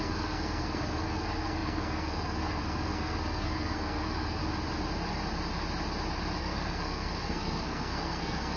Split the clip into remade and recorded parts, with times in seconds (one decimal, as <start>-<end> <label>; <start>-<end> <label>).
0.0-4.4 remade; 4.4-6.4 recorded; 6.4-8.6 remade